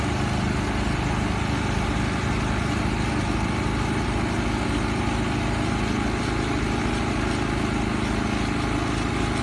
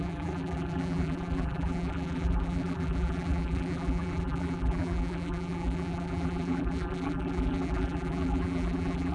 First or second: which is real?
first